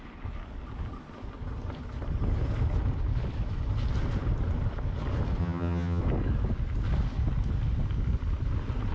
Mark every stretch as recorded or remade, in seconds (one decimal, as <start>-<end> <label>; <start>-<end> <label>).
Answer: 0.0-5.4 recorded; 5.4-6.0 remade; 6.0-8.9 recorded